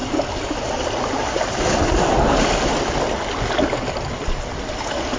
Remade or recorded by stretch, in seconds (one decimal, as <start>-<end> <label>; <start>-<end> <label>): 0.0-5.2 recorded